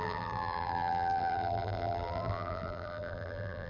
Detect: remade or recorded remade